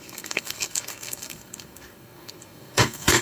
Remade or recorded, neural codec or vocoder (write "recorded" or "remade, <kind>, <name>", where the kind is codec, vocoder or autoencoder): remade, codec, SNAC